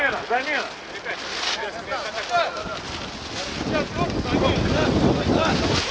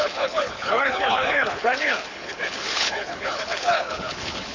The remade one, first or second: second